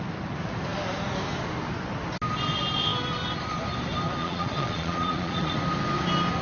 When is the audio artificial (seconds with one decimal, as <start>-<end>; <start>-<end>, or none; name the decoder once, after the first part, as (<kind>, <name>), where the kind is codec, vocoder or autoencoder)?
4.2-5.6 (vocoder, Vocos)